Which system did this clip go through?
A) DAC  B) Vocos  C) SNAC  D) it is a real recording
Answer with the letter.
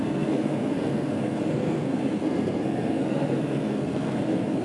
C